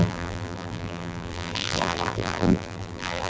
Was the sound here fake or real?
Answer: fake